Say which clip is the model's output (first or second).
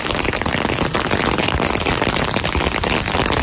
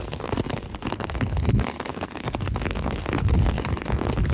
second